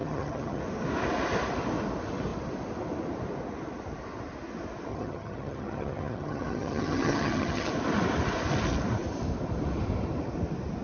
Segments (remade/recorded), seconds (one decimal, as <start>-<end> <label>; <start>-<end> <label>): 0.0-0.6 remade; 0.6-4.9 recorded; 4.9-7.7 remade; 7.7-10.8 recorded